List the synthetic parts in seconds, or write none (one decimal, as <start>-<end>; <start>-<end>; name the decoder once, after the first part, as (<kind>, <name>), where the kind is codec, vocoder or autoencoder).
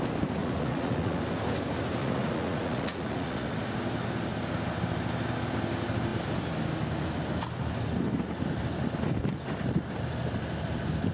0.4-1.2 (vocoder, Vocos); 2.0-3.5